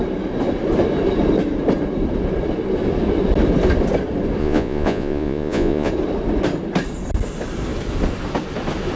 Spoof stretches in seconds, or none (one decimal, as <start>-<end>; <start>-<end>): 4.4-5.9